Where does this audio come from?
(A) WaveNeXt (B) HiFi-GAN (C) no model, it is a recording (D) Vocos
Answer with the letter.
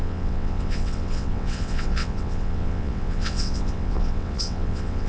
A